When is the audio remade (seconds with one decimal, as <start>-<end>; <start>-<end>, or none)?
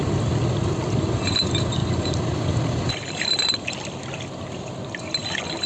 none